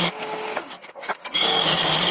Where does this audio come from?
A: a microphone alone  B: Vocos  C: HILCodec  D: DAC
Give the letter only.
D